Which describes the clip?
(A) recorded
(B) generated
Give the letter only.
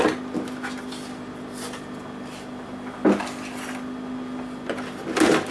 A